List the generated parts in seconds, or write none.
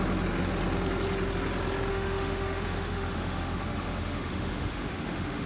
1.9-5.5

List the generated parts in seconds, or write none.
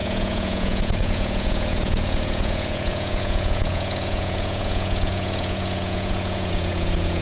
0.0-7.2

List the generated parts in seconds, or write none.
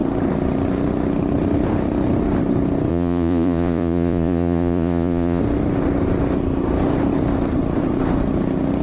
2.9-5.4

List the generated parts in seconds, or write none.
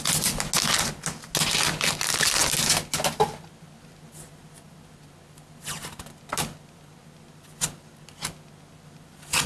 none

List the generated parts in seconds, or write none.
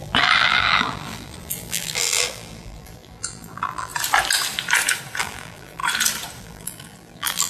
0.0-3.9; 5.2-5.8; 6.4-7.5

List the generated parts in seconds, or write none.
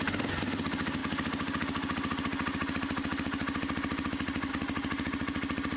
none